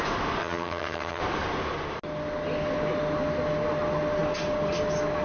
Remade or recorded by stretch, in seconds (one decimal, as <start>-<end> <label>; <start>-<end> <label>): 0.0-0.4 recorded; 0.4-1.2 remade; 1.2-5.2 recorded